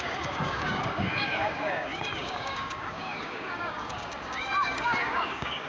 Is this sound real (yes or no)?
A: no